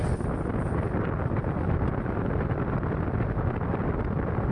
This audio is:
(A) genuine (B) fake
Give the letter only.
A